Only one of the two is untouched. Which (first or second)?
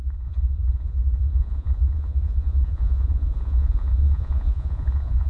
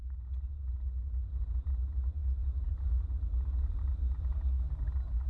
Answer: second